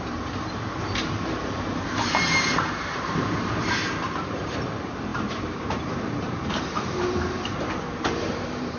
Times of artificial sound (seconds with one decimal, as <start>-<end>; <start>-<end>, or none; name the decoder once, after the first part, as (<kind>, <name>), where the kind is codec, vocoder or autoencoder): 0.0-8.8 (vocoder, BigVGAN v2)